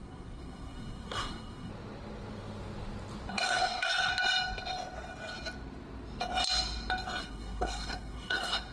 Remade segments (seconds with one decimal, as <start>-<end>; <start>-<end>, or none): 0.0-1.7; 3.3-4.1; 7.2-8.7